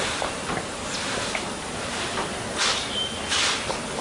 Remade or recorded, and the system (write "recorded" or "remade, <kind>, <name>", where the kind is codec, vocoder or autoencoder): recorded